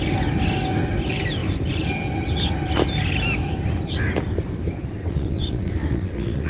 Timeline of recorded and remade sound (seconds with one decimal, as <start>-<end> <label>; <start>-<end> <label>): 0.0-5.0 recorded; 5.0-6.5 remade